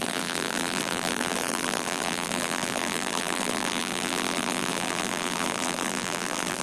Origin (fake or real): fake